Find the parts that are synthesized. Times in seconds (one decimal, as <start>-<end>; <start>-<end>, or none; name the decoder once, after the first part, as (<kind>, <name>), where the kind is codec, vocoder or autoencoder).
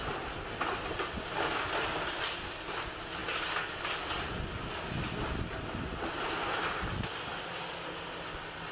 none